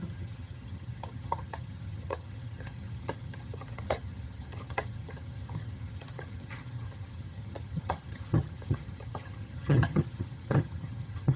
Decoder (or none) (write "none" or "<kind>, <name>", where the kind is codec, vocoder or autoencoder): vocoder, HiFi-GAN